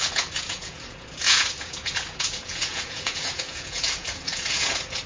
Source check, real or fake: fake